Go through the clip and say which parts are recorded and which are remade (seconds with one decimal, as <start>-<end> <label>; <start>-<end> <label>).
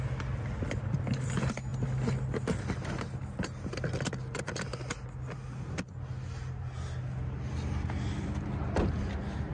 0.0-9.5 recorded